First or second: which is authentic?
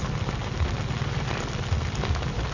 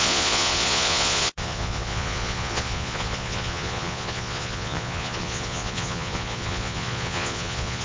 first